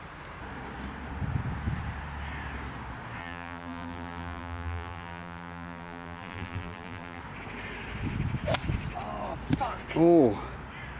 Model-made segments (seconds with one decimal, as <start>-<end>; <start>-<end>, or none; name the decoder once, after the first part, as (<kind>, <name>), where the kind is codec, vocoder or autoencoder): 3.2-7.2 (vocoder, BigVGAN v2)